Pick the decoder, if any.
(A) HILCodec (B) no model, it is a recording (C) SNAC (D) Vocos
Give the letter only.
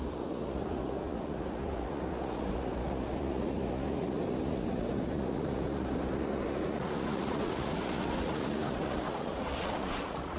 D